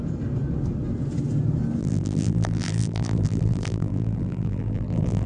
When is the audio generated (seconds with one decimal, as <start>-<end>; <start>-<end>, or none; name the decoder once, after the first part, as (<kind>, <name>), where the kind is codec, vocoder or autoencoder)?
1.8-5.3 (vocoder, BigVGAN v2)